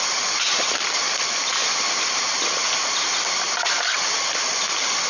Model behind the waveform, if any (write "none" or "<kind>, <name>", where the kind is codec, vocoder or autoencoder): vocoder, BigVGAN v2